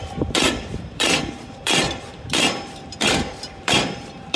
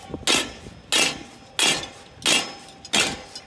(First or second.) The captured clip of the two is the second